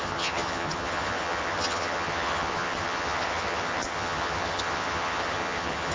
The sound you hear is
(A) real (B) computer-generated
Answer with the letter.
B